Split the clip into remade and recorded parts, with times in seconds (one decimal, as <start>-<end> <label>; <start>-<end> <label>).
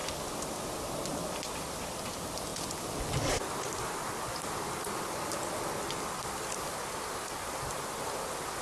0.0-8.6 recorded